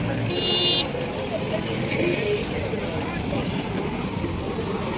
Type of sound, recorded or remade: recorded